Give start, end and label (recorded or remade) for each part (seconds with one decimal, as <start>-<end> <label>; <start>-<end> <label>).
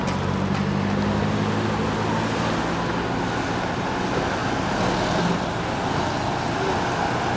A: 0.0-7.4 recorded